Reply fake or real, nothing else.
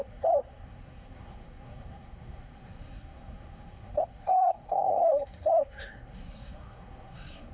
fake